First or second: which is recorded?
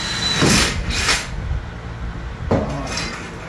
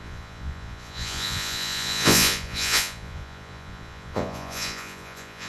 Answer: first